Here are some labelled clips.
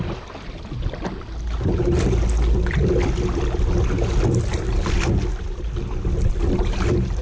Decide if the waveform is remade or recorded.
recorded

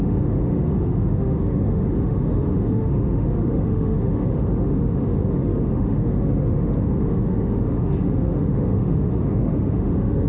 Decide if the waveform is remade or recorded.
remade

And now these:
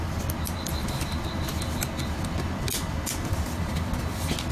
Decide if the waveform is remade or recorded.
recorded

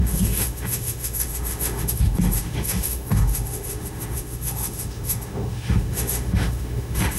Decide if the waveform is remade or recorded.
remade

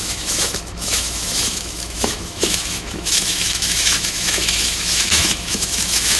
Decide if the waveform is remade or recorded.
remade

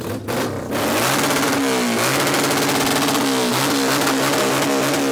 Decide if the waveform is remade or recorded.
recorded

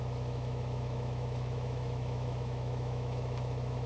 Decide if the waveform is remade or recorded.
remade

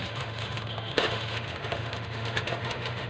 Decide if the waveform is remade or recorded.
remade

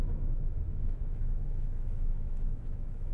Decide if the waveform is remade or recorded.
remade